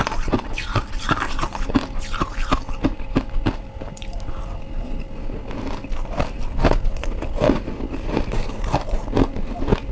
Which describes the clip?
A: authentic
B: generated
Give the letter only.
A